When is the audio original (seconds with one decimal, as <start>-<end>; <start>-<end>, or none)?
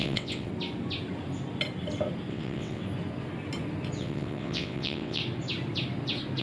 0.5-2.3; 2.8-4.0; 5.2-6.4